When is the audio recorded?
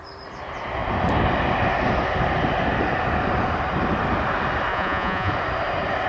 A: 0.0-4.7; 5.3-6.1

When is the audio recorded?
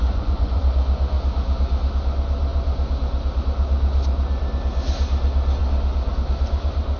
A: 0.6-7.0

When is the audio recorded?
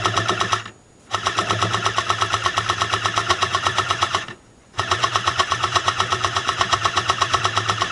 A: 0.0-3.2; 7.4-7.9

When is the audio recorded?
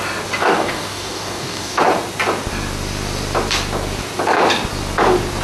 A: 0.0-0.4; 1.8-5.4